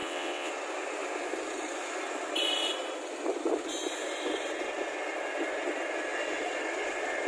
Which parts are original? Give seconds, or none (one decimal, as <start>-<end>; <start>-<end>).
0.5-7.3